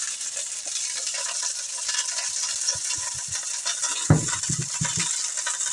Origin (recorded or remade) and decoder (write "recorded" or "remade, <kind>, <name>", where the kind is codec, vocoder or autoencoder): recorded